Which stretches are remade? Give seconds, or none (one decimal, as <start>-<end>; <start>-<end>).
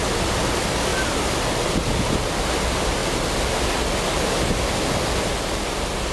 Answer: none